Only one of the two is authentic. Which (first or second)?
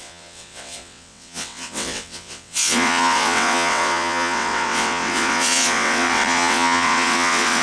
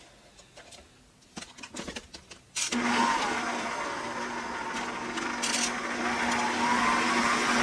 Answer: second